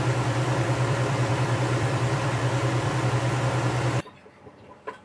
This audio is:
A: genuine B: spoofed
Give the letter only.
B